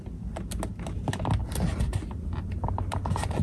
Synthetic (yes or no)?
no